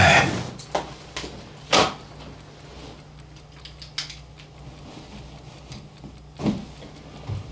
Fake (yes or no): no